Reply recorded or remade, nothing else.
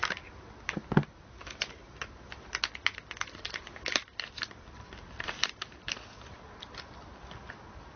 recorded